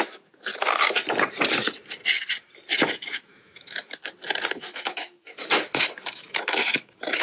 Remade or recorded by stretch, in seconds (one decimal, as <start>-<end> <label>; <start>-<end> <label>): 0.0-0.5 remade; 0.5-2.9 recorded; 2.9-4.0 remade; 4.0-4.6 recorded; 4.6-7.2 remade

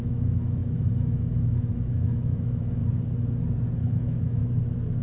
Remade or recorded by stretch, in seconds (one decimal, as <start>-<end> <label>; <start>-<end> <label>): 0.0-2.8 remade; 2.8-3.8 recorded; 3.8-4.4 remade; 4.4-5.0 recorded

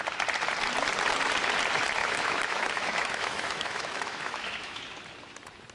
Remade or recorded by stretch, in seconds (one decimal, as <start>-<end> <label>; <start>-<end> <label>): 0.0-2.0 recorded; 2.0-4.8 remade; 4.8-5.7 recorded

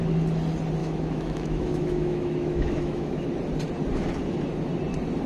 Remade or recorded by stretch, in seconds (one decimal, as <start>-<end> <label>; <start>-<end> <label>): 0.0-0.8 recorded; 0.8-3.3 remade; 3.3-5.3 recorded

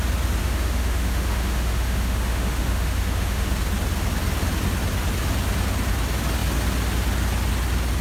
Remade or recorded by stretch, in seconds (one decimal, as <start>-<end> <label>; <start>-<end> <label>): 0.0-0.4 recorded; 0.4-3.5 remade; 3.5-8.0 recorded

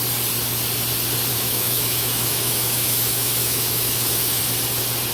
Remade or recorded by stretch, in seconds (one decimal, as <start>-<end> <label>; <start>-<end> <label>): 0.0-1.3 recorded; 1.3-4.4 remade; 4.4-5.1 recorded

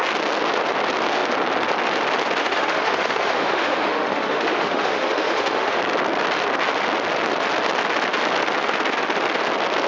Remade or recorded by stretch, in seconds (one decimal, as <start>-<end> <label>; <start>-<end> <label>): 0.0-2.4 recorded; 2.4-5.8 remade; 5.8-9.9 recorded

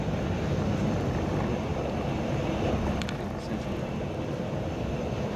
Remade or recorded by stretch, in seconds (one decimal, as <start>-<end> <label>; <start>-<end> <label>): 0.0-5.4 recorded